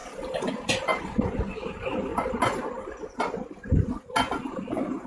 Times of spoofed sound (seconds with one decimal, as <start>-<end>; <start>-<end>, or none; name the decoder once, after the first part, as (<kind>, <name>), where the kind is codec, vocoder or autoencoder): none